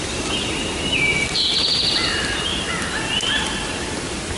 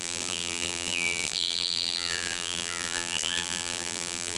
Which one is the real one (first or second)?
first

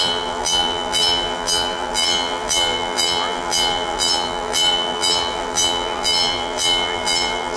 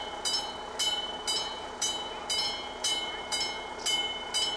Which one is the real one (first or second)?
second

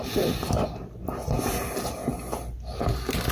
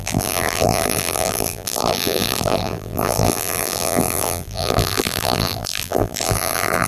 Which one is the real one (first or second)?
first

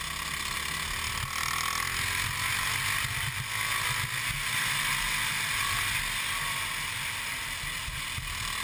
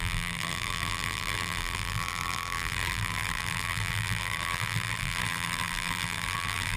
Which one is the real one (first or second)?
first